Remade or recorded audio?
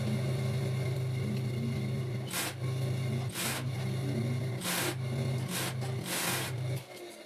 recorded